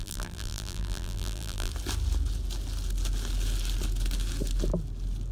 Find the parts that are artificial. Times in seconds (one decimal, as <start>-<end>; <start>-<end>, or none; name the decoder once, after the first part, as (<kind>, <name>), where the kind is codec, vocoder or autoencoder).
0.0-1.7 (vocoder, BigVGAN v2)